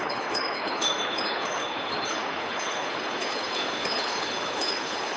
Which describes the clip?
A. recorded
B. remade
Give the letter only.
B